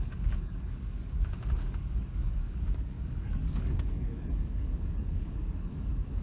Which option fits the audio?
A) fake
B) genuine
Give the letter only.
A